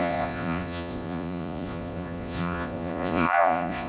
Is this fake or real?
fake